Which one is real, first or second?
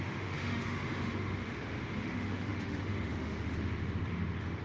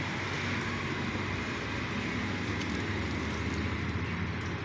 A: second